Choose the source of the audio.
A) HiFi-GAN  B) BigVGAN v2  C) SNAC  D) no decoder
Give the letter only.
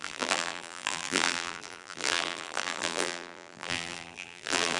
B